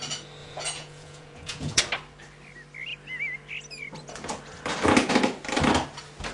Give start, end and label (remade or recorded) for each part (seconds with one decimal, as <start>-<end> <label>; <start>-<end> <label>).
0.0-0.4 recorded; 0.4-1.8 remade; 1.8-6.3 recorded